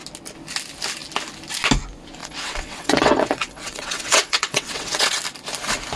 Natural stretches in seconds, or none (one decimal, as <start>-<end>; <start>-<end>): 0.0-2.2; 5.2-6.0